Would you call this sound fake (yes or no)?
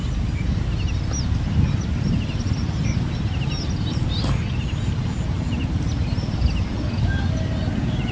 no